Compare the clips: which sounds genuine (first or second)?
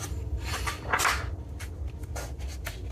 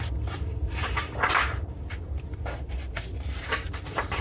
first